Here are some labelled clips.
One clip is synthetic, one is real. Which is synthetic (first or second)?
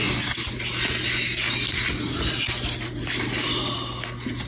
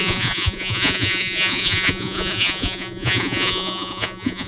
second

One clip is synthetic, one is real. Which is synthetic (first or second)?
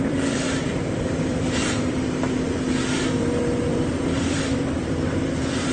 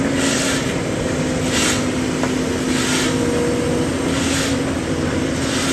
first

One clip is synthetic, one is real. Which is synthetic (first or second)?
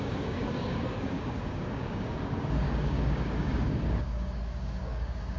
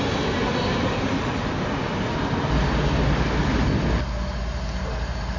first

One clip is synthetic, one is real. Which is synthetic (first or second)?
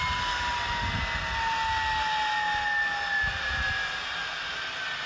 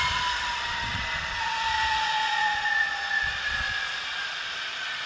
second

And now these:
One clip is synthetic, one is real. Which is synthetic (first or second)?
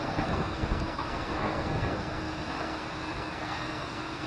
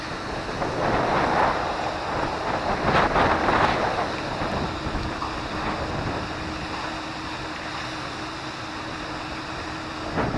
first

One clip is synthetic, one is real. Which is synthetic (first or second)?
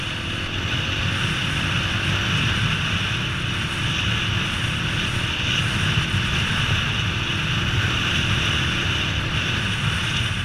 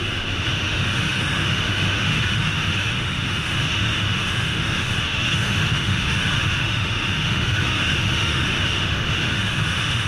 second